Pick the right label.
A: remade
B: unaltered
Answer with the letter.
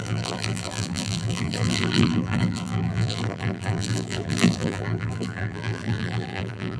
A